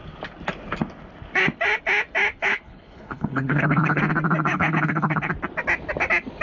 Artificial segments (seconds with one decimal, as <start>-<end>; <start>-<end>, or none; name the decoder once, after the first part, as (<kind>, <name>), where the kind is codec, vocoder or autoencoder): 2.4-4.0 (codec, HILCodec); 4.5-5.3